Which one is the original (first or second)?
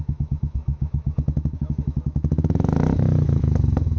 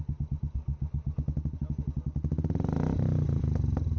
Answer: second